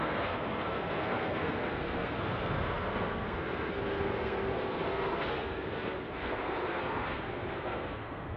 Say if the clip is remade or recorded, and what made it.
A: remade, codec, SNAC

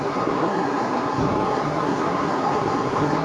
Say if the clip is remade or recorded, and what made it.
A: remade, codec, SNAC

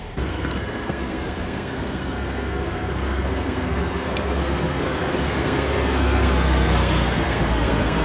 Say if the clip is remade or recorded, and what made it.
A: remade, codec, SNAC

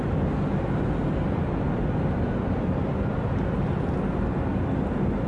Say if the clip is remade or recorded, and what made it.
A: recorded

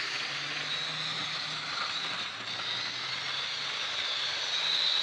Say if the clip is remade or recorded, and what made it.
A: recorded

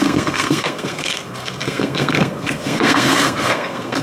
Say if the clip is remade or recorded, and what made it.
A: remade, codec, SNAC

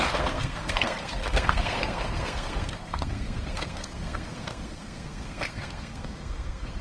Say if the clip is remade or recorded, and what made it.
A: remade, codec, SNAC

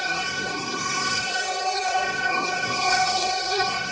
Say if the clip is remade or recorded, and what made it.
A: remade, codec, SNAC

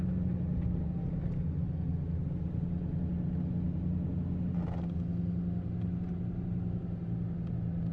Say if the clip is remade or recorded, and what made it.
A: recorded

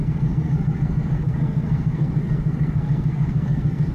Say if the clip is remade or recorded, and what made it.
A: remade, codec, SNAC